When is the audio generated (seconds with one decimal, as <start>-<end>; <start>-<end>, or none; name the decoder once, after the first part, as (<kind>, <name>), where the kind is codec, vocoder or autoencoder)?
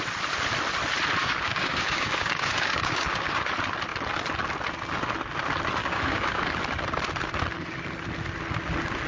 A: 1.2-3.5 (codec, DAC); 5.8-6.4